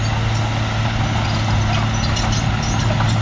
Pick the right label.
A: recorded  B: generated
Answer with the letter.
A